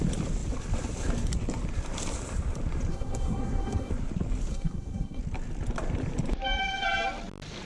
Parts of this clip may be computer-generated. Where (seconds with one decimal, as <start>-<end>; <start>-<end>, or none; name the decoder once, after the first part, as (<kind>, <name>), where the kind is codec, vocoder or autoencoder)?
2.9-3.9 (codec, SNAC); 4.5-5.2